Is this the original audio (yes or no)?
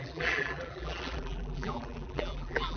no